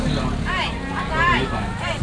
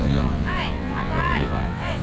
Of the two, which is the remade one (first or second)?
second